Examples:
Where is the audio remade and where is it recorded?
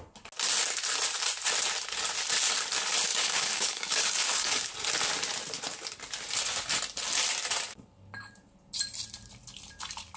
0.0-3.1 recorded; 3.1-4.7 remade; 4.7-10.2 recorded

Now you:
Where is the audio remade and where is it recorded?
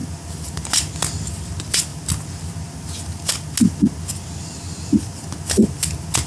0.0-6.3 recorded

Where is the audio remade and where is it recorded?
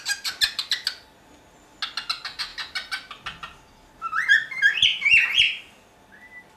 0.0-6.6 recorded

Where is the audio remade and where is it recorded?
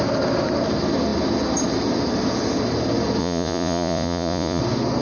0.0-3.2 recorded; 3.2-4.6 remade; 4.6-5.0 recorded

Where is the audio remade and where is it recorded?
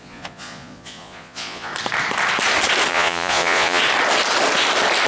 0.0-1.7 remade; 1.7-2.9 recorded; 2.9-3.8 remade; 3.8-5.1 recorded